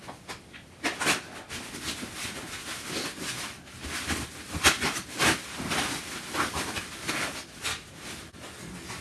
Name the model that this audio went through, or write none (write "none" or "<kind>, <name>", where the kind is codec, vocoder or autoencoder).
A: none